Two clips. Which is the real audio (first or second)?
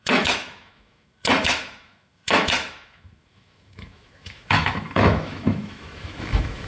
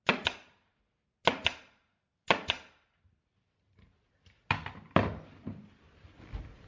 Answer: second